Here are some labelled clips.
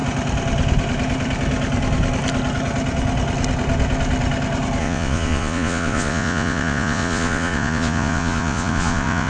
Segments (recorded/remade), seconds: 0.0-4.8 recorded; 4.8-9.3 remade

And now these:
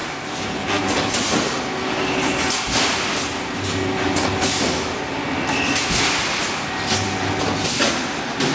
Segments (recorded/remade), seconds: 0.0-8.5 recorded

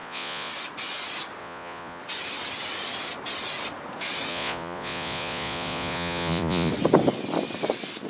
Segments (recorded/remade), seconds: 0.0-0.5 remade; 0.5-1.4 recorded; 1.4-2.0 remade; 2.0-4.3 recorded; 4.3-6.7 remade; 6.7-8.1 recorded

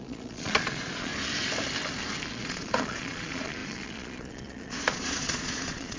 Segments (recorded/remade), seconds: 0.0-1.1 remade; 1.1-2.3 recorded; 2.3-6.0 remade

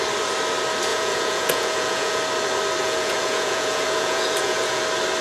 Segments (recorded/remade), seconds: 0.0-0.9 recorded; 0.9-2.2 remade; 2.2-2.8 recorded; 2.8-4.8 remade; 4.8-5.2 recorded

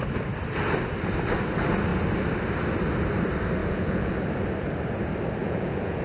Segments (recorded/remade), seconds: 0.0-3.6 recorded; 3.6-4.1 remade; 4.1-5.4 recorded; 5.4-6.0 remade